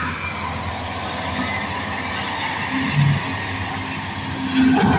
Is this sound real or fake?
real